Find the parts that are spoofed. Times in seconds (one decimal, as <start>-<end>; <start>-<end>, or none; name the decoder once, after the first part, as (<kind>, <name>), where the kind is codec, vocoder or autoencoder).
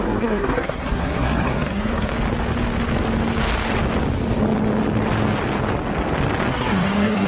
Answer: 0.0-2.1 (codec, SNAC); 6.5-7.3